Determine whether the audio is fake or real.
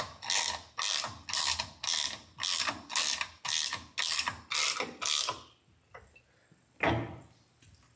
real